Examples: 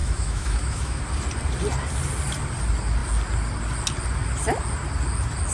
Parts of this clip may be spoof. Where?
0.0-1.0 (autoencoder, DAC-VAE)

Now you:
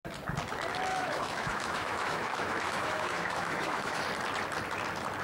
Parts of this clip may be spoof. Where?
0.9-4.0 (autoencoder, DAC-VAE)

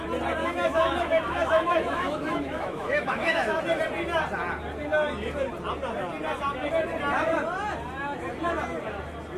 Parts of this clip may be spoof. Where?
0.4-3.6 (autoencoder, DAC-VAE)

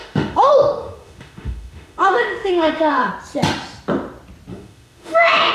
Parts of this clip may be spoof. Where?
0.0-3.1 (autoencoder, DAC-VAE); 4.5-5.5